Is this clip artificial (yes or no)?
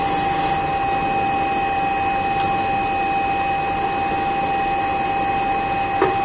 no